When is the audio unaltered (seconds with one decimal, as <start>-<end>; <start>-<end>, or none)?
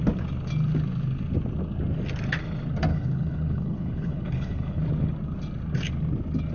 0.0-2.9; 4.8-6.5